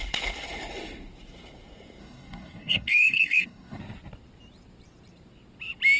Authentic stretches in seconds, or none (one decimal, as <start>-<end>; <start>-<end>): 0.0-2.0; 3.8-6.0